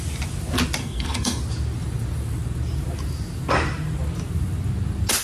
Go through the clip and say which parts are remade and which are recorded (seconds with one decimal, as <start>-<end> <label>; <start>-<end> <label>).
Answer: 0.0-0.8 recorded; 0.8-1.4 remade; 1.4-5.2 recorded